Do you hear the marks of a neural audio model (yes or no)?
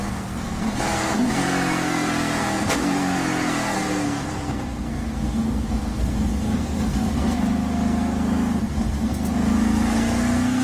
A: yes